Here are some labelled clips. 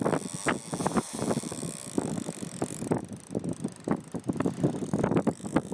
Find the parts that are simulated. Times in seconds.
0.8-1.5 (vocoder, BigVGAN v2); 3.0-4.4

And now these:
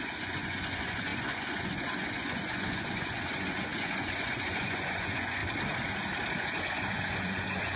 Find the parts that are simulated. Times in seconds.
0.0-5.4 (vocoder, Vocos); 6.4-7.8

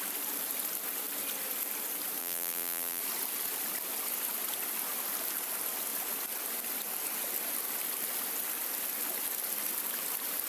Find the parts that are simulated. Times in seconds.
2.2-3.0 (vocoder, BigVGAN v2)

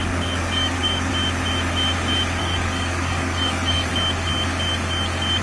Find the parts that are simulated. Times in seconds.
0.0-1.1 (codec, DAC); 2.4-3.9

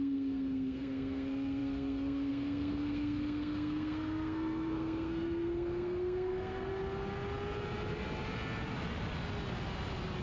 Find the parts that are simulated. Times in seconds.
0.0-6.7 (codec, SNAC)

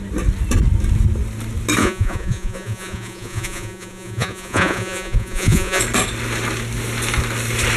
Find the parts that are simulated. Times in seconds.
1.8-5.8 (vocoder, Vocos)

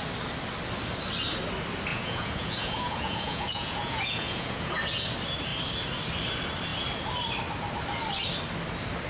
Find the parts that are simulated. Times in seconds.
1.9-4.7 (vocoder, Vocos)

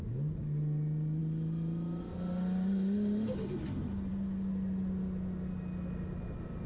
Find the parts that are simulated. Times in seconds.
none